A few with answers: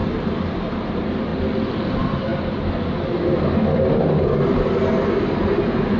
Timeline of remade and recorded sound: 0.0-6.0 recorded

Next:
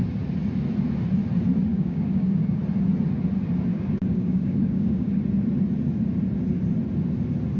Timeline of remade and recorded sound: 0.0-1.7 recorded; 1.7-2.6 remade; 2.6-3.7 recorded; 3.7-5.2 remade; 5.2-7.6 recorded

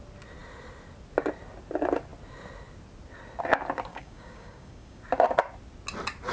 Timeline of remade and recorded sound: 0.0-3.9 recorded; 3.9-5.0 remade; 5.0-6.3 recorded

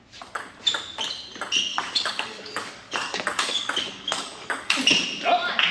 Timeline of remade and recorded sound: 0.0-1.7 recorded; 1.7-4.8 remade; 4.8-5.7 recorded

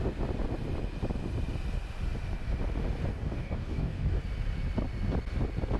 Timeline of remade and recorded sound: 0.0-3.1 recorded; 3.1-4.2 remade; 4.2-5.8 recorded